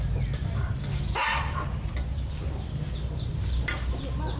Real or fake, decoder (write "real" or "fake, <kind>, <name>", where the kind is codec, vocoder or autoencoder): real